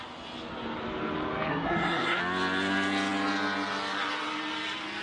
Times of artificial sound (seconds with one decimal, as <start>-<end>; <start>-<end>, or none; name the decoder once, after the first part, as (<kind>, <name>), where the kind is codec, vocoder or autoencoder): 1.5-2.2 (codec, SNAC)